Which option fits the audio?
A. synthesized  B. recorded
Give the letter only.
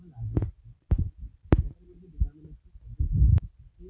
B